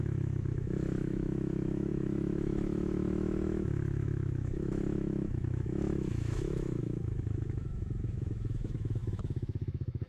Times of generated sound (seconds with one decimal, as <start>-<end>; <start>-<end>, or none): 0.0-10.1

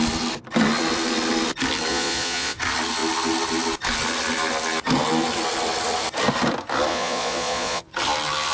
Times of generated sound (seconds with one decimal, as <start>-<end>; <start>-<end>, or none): 1.9-2.6; 6.9-7.9

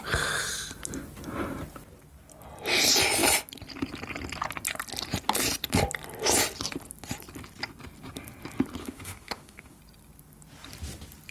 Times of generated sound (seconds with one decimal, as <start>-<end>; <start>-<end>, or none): 8.8-9.8

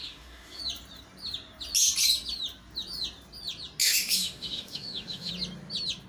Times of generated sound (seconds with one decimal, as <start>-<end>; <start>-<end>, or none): 0.0-0.6; 3.8-5.3

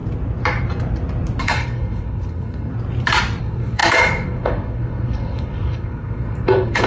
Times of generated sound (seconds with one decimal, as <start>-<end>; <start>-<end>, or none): 1.4-2.7; 3.4-6.9